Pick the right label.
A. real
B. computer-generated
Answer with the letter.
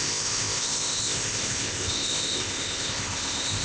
B